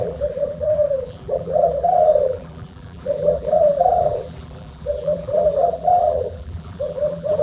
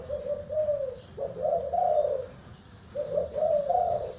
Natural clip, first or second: second